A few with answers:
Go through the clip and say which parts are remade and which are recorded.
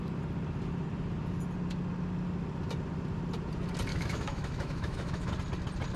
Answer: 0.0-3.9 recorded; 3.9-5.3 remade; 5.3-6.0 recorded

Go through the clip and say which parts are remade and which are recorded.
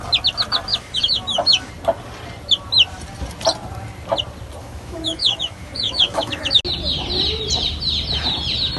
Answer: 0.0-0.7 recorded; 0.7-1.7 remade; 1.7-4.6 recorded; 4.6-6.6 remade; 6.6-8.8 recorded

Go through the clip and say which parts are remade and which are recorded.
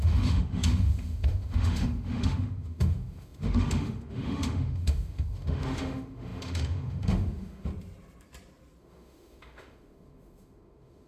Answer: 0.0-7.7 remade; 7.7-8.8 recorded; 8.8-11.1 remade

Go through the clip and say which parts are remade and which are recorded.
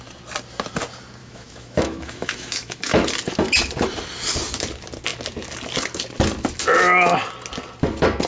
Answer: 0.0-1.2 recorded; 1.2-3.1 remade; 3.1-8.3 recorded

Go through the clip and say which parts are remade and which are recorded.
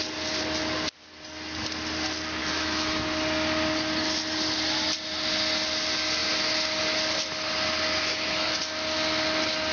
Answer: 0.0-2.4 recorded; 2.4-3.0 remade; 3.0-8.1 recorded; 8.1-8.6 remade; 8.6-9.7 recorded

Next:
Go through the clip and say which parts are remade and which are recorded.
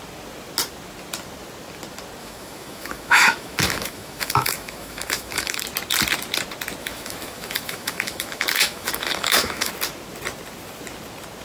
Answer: 0.0-2.2 recorded; 2.2-5.6 remade; 5.6-6.8 recorded; 6.8-9.7 remade; 9.7-11.4 recorded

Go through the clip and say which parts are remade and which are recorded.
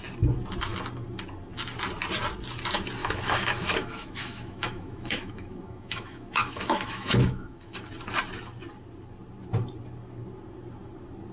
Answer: 0.0-3.0 recorded; 3.0-7.9 remade; 7.9-11.3 recorded